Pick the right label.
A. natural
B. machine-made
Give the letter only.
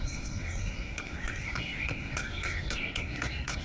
B